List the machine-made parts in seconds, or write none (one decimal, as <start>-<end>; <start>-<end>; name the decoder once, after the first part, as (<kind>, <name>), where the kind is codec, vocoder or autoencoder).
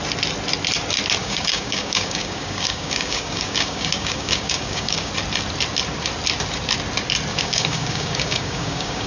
1.2-5.1 (codec, DAC); 7.3-9.1